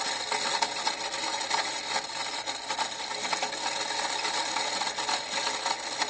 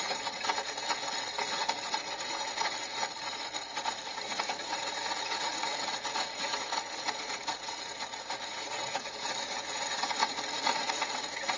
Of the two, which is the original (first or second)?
first